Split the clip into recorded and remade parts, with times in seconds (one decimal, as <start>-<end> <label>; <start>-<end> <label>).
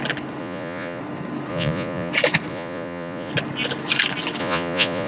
0.0-0.4 recorded; 0.4-1.0 remade; 1.0-1.5 recorded; 1.5-2.1 remade; 2.1-2.5 recorded; 2.5-3.3 remade; 3.3-4.4 recorded; 4.4-5.1 remade